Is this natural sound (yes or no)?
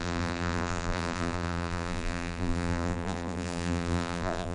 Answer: no